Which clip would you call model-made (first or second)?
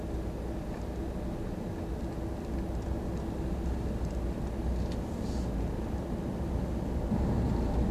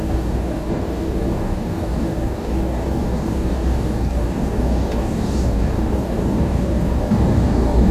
second